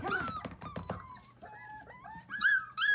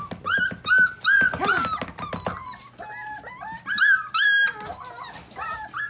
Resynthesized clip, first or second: first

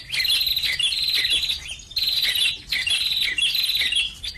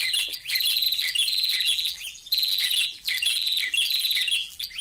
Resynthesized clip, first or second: second